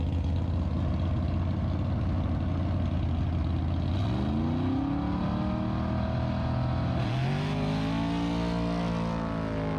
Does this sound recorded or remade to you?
recorded